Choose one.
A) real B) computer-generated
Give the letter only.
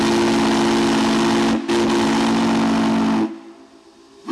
A